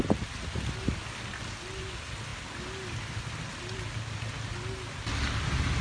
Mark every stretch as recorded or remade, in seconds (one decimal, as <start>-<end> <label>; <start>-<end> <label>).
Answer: 0.0-5.8 recorded